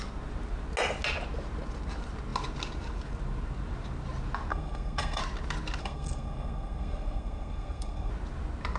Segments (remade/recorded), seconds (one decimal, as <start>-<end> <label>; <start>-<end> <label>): 0.0-4.5 recorded; 4.5-5.2 remade; 5.2-5.8 recorded; 5.8-8.1 remade; 8.1-8.8 recorded